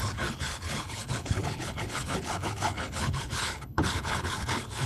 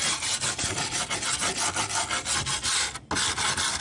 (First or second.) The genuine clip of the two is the second